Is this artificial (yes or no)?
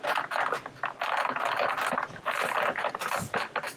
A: no